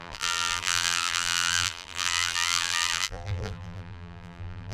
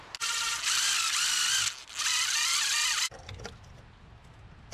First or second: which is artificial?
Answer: first